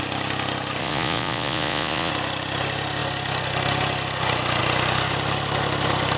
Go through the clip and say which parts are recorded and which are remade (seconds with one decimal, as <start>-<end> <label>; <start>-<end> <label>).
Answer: 0.0-0.8 recorded; 0.8-2.1 remade; 2.1-6.2 recorded